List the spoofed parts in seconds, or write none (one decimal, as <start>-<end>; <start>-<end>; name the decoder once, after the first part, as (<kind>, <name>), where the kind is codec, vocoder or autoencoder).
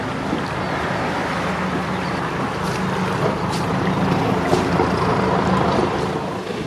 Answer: 4.5-6.7 (vocoder, BigVGAN v2)